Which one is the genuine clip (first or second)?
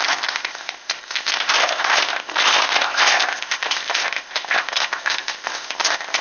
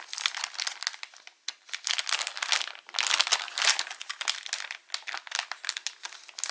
second